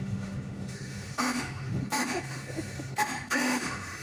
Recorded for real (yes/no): no